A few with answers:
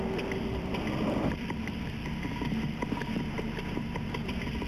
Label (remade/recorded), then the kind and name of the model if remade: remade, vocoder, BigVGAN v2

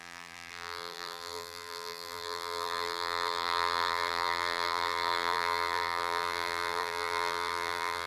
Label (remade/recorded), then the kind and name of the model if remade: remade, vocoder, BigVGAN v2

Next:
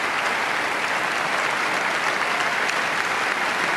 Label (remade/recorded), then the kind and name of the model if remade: recorded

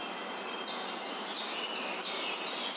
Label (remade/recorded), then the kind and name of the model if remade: recorded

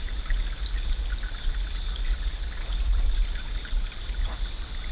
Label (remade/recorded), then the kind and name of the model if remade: recorded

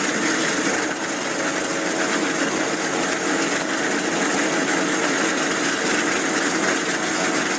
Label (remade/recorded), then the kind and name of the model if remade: recorded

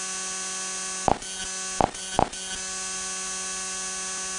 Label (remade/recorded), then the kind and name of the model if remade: recorded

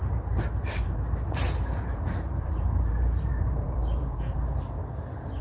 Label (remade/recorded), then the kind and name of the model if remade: remade, vocoder, BigVGAN v2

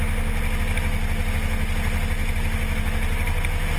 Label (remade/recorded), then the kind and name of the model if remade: recorded